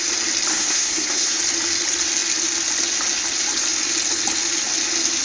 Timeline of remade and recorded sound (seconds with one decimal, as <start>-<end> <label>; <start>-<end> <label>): 0.0-0.5 recorded; 0.5-1.4 remade; 1.4-5.2 recorded